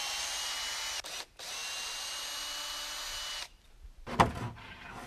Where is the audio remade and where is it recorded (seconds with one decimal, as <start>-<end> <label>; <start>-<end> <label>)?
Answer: 0.0-5.1 recorded